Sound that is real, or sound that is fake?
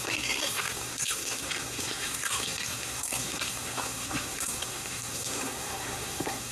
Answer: fake